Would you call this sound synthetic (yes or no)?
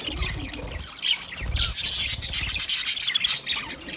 no